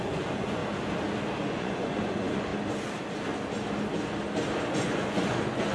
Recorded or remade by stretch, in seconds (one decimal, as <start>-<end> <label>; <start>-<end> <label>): 0.0-0.6 remade; 0.6-1.4 recorded; 1.4-2.5 remade; 2.5-4.7 recorded; 4.7-5.7 remade